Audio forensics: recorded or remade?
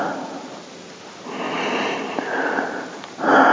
recorded